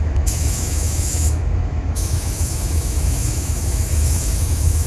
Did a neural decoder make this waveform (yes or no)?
yes